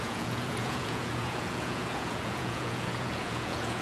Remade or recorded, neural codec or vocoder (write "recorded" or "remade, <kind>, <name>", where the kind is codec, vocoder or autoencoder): remade, vocoder, Vocos